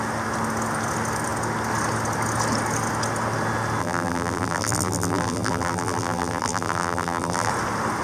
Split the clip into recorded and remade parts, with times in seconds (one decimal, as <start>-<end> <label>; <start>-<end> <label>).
0.0-3.8 recorded; 3.8-7.5 remade; 7.5-8.0 recorded